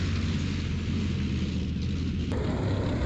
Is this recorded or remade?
recorded